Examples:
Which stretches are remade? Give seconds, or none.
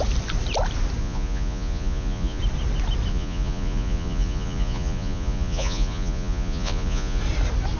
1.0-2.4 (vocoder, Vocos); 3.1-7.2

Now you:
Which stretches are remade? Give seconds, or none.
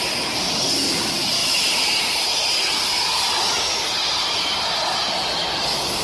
none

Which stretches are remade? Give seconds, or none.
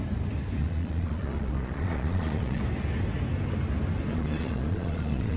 0.6-2.6 (vocoder, Vocos); 4.1-5.4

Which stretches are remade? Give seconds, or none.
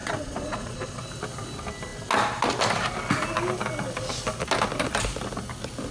0.0-1.0 (vocoder, Vocos)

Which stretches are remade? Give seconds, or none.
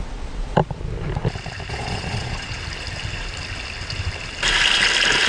0.0-0.6 (vocoder, Vocos); 1.7-2.6